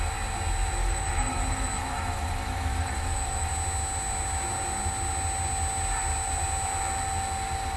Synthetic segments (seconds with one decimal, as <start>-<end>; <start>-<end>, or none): 0.8-3.5